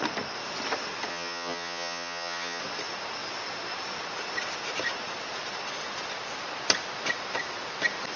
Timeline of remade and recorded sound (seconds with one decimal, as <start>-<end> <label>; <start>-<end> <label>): 0.0-1.1 recorded; 1.1-2.6 remade; 2.6-8.2 recorded